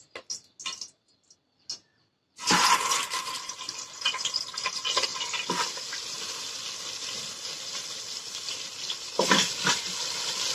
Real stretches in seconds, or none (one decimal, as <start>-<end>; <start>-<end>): 0.0-10.5